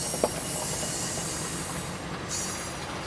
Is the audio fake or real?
real